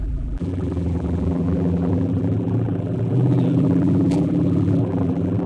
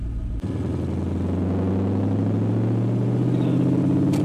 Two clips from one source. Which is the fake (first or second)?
first